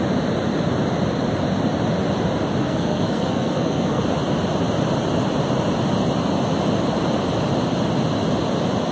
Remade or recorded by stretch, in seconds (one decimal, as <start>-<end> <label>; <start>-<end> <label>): 0.0-2.6 recorded; 2.6-4.0 remade; 4.0-8.9 recorded